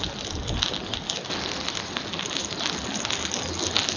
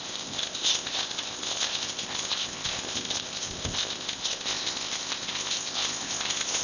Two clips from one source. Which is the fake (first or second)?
second